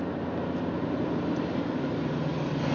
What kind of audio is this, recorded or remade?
recorded